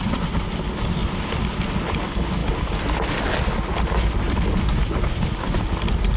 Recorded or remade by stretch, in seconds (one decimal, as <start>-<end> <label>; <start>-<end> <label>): 0.0-6.2 recorded